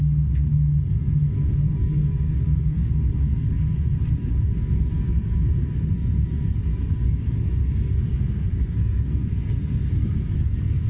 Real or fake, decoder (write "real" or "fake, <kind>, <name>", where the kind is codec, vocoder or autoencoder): fake, codec, SNAC